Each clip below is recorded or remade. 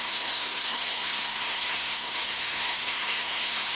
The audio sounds remade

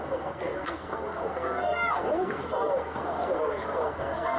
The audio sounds remade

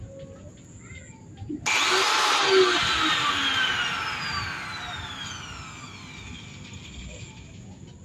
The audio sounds recorded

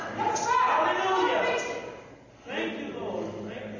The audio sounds recorded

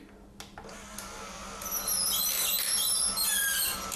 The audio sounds recorded